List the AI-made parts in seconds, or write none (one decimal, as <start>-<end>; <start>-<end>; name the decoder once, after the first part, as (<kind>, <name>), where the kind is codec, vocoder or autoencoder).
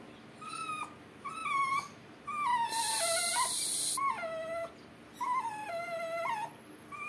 none